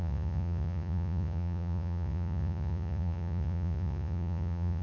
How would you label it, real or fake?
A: fake